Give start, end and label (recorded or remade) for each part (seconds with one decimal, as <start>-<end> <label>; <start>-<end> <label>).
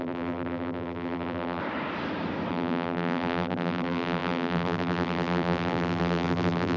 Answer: 0.0-1.6 remade; 1.6-2.5 recorded; 2.5-6.8 remade